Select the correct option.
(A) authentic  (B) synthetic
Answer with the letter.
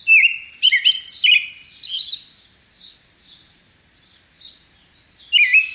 A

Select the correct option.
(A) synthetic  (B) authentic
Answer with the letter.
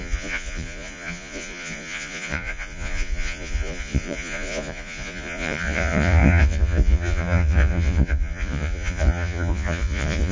A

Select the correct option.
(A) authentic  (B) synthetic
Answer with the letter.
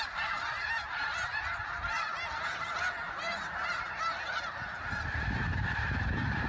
B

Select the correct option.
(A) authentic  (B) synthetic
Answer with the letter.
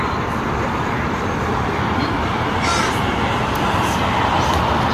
A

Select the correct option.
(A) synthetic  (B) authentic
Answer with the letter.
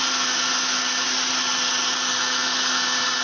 B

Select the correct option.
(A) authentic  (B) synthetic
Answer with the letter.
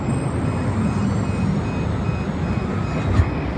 A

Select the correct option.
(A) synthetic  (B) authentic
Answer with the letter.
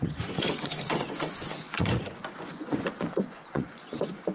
A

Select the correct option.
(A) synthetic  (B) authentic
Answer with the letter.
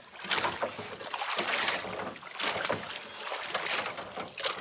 B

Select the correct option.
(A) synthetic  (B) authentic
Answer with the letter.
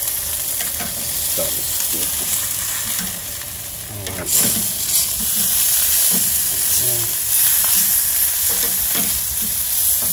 B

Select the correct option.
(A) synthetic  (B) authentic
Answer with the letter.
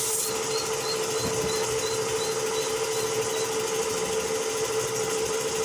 B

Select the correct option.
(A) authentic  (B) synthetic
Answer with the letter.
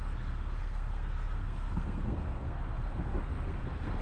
B